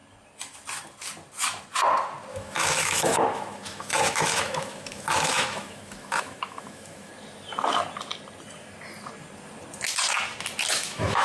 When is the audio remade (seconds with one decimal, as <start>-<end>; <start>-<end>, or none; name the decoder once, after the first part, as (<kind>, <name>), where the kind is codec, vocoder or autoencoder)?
2.3-7.1 (autoencoder, DAC-VAE); 10.7-11.2